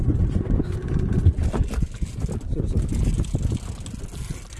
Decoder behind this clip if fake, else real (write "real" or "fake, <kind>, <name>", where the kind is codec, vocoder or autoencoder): real